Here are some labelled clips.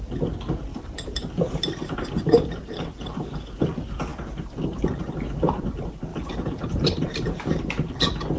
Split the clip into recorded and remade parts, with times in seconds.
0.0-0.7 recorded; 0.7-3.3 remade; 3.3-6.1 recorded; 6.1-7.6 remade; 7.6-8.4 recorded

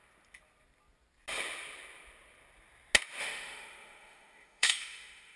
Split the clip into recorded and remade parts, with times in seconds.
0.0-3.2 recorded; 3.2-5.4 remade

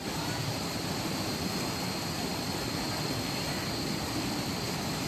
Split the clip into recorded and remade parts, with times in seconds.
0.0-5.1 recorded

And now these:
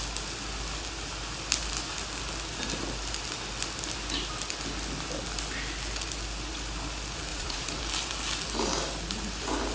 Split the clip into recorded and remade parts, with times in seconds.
0.0-7.3 recorded; 7.3-7.8 remade; 7.8-9.7 recorded